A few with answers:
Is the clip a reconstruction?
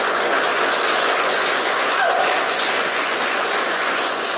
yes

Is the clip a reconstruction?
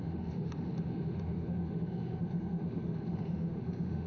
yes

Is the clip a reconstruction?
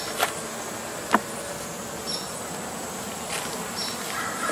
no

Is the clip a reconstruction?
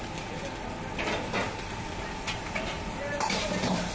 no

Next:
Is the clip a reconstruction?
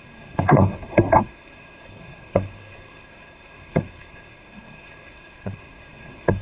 yes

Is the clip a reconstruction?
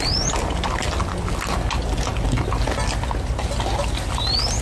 no